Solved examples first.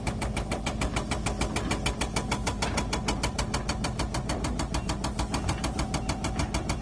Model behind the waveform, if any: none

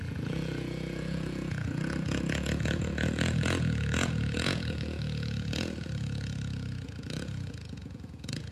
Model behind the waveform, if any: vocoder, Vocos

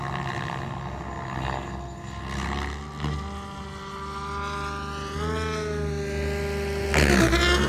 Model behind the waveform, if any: none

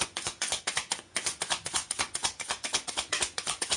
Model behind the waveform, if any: vocoder, Vocos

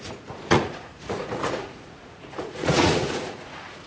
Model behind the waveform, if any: vocoder, Vocos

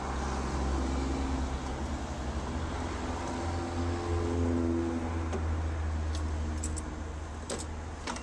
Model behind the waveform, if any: none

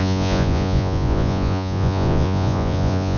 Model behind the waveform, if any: vocoder, Vocos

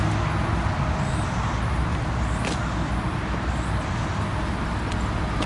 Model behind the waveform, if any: none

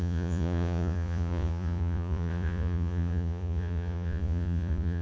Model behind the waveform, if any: vocoder, Vocos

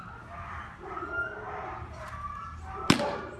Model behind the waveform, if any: none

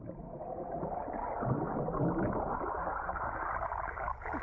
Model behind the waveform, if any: none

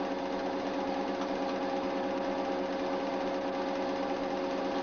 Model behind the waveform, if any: none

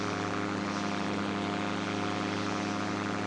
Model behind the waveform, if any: none